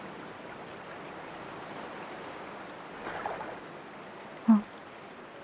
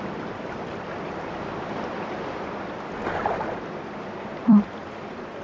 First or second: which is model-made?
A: second